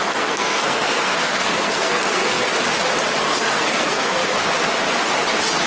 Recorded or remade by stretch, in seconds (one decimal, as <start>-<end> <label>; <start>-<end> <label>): 0.0-2.5 remade; 2.5-3.2 recorded; 3.2-4.2 remade; 4.2-5.7 recorded